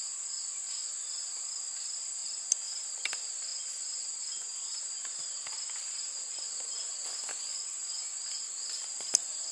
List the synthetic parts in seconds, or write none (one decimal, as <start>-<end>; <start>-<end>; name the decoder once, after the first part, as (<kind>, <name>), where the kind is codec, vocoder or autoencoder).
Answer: 3.5-4.8 (vocoder, Vocos); 7.5-8.2